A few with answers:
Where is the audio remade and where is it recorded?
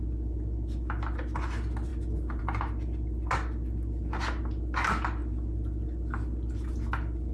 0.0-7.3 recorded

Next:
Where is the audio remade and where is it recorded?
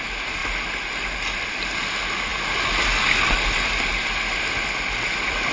0.0-5.5 recorded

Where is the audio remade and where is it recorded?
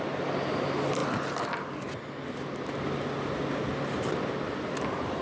0.0-5.2 recorded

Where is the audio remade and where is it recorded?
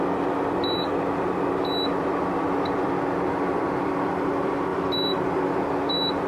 0.0-6.3 recorded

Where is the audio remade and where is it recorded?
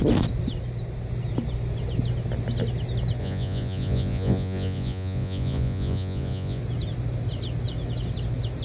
0.0-3.2 recorded; 3.2-6.6 remade; 6.6-8.6 recorded